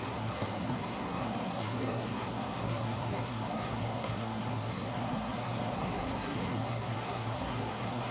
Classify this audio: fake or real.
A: fake